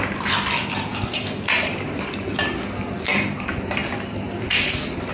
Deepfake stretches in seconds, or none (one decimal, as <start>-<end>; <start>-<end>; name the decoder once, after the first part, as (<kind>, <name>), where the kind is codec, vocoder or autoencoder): none